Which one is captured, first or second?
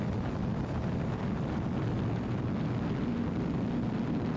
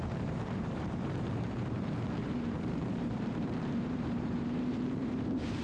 first